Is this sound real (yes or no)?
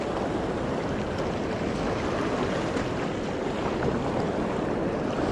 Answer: yes